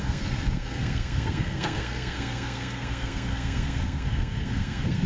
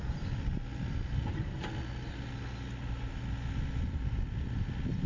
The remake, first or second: first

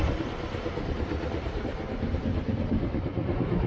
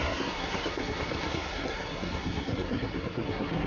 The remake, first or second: second